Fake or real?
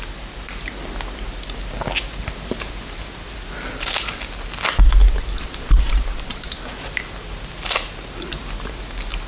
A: real